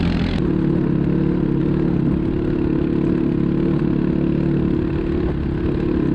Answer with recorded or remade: recorded